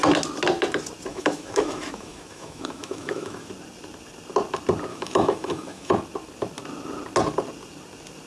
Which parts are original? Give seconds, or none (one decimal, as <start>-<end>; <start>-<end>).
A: 0.0-1.1; 3.5-4.9; 5.9-8.3